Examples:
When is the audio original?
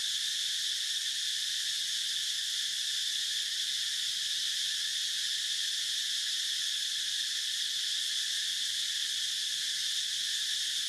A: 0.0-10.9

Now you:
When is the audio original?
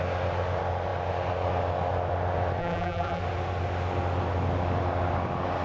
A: 0.0-2.6; 3.2-5.6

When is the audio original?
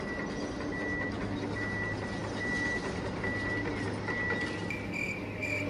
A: 0.0-5.7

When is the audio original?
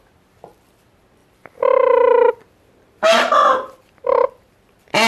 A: 0.0-1.2; 2.3-5.1